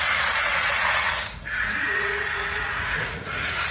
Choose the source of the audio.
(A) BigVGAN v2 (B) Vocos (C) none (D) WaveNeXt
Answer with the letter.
B